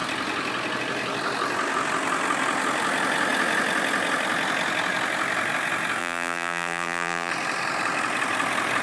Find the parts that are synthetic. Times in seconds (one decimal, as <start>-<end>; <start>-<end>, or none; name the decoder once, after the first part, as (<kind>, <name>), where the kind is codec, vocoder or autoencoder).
6.0-7.3 (vocoder, BigVGAN v2)